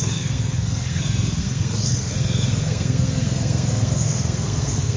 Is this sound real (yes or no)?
no